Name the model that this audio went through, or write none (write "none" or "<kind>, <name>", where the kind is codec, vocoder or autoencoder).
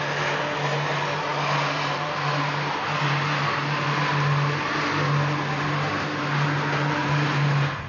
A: none